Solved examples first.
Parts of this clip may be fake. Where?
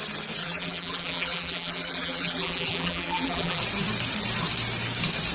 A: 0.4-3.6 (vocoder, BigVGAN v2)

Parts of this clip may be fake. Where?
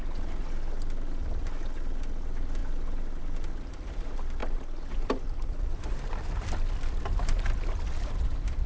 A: none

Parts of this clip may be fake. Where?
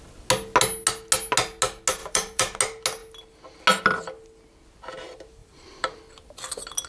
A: 2.0-2.6 (vocoder, BigVGAN v2); 5.4-6.0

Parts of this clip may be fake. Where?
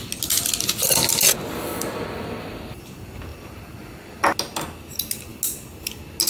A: 1.7-2.5 (vocoder, BigVGAN v2); 3.3-4.0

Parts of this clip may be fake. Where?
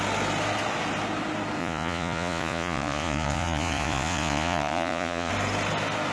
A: 1.6-5.3 (vocoder, Vocos)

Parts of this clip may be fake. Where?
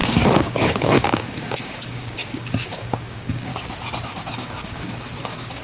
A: 0.0-3.5 (codec, DAC); 4.1-5.6